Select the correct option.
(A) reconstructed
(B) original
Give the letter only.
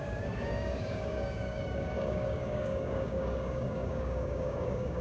A